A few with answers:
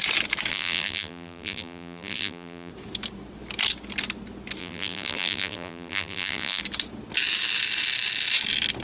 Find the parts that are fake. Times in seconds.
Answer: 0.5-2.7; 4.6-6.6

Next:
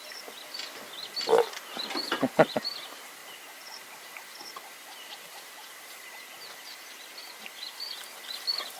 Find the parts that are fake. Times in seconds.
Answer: 3.2-5.8

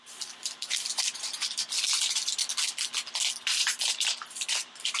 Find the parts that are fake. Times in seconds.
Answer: 0.0-2.4; 3.5-5.0

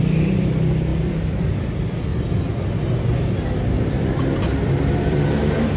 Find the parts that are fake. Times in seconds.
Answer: 0.9-1.6; 2.1-5.3

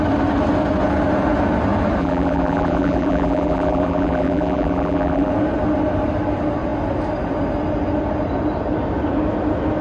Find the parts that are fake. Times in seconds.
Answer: 2.0-5.3

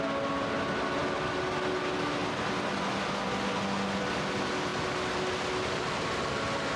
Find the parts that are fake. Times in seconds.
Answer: none